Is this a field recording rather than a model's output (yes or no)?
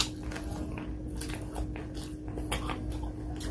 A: yes